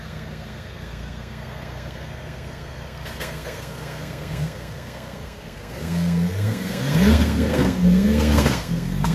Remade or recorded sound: remade